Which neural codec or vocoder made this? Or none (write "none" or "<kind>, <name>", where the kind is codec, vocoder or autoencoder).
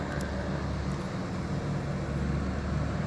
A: none